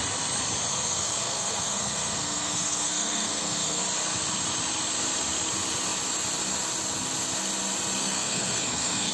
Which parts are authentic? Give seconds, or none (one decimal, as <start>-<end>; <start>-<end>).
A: 0.0-0.7; 3.8-8.0